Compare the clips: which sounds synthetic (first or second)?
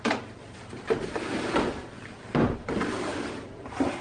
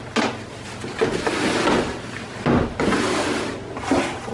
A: first